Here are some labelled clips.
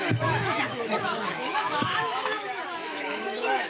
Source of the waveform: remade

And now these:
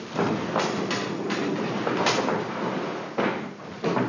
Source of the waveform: recorded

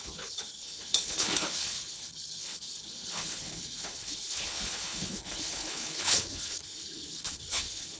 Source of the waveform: remade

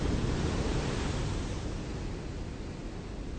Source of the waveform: recorded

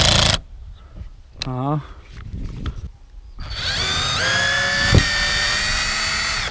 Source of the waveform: recorded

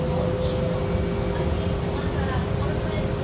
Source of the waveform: recorded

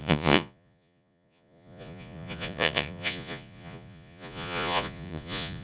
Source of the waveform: remade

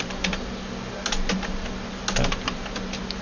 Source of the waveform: recorded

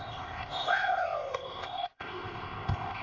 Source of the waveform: remade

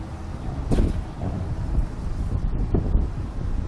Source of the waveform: recorded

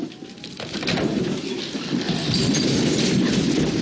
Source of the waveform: recorded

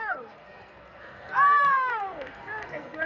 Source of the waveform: remade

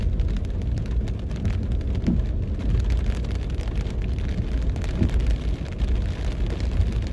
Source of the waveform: recorded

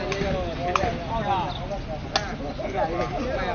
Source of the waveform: recorded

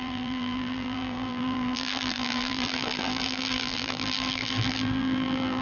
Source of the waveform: remade